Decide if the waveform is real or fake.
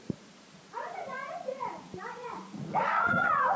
fake